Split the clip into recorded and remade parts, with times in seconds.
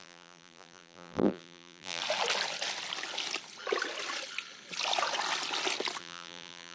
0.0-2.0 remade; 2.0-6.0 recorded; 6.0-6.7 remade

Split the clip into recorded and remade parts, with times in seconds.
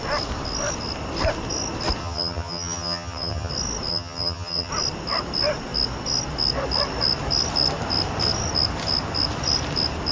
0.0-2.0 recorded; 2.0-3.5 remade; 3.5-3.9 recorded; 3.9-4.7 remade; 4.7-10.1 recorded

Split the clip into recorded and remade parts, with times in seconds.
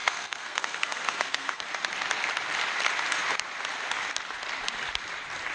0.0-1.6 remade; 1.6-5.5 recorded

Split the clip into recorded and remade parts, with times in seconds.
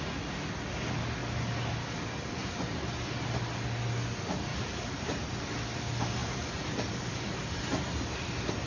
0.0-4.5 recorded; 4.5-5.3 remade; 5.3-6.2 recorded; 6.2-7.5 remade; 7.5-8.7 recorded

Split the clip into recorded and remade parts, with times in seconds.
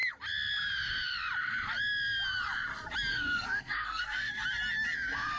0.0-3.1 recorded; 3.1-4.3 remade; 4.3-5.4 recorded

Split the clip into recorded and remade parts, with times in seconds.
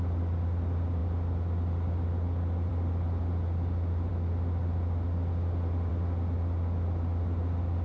0.0-7.8 recorded